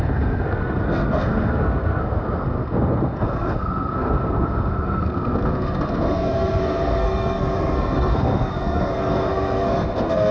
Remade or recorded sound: remade